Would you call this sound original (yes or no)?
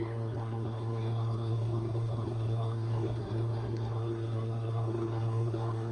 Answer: no